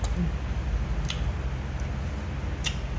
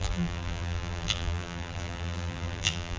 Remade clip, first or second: second